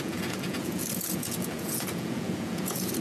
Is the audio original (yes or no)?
no